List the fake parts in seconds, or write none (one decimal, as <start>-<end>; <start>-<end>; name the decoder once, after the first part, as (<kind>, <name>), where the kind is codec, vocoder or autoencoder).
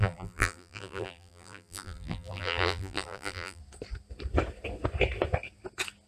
0.0-3.6 (vocoder, BigVGAN v2)